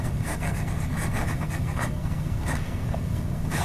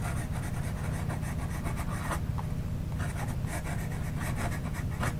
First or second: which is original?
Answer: second